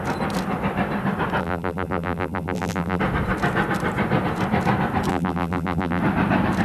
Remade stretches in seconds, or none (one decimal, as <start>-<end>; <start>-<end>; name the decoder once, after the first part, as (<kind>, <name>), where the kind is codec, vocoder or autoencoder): 1.4-3.0 (vocoder, BigVGAN v2); 5.1-6.0